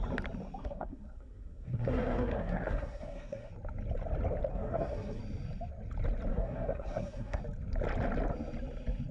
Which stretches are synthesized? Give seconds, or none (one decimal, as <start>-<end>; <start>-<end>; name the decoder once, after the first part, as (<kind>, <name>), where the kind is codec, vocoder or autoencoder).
0.6-3.5 (codec, SNAC); 4.5-5.2; 6.3-7.4